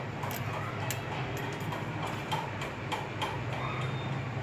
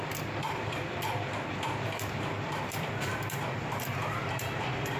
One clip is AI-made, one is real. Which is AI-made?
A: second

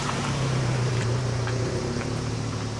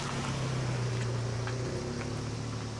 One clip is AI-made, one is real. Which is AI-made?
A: first